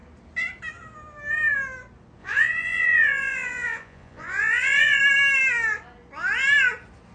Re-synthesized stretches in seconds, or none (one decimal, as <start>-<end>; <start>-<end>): 2.2-5.0